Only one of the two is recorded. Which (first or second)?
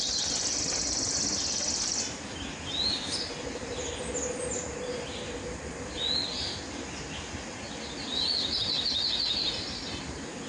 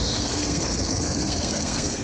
first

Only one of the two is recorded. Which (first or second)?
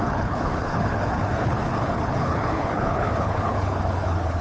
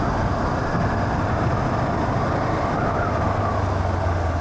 second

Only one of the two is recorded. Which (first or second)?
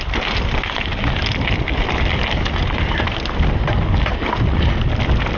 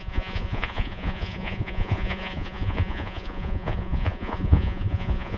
first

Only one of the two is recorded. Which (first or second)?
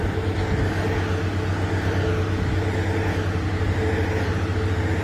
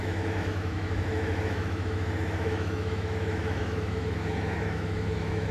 first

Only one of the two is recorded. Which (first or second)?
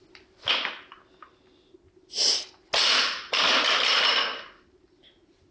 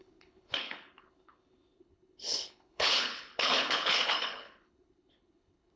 first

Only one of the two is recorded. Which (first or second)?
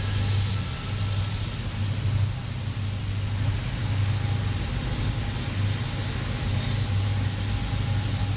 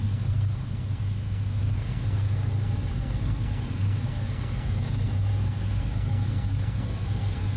first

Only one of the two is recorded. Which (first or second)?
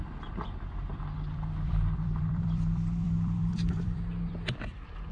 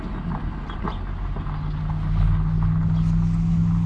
second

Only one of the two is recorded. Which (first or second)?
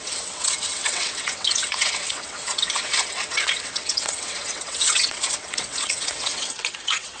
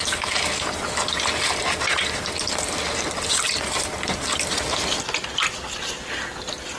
second